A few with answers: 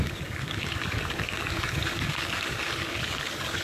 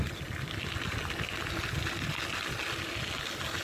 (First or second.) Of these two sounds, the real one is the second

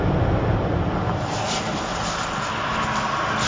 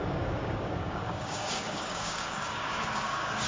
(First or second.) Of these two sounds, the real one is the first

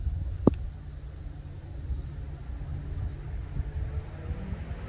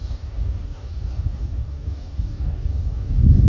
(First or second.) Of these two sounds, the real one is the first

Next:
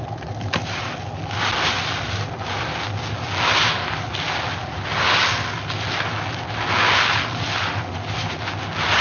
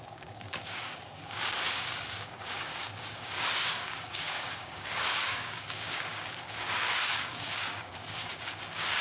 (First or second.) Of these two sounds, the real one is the first